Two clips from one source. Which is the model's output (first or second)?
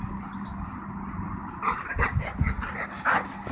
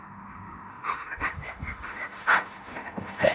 second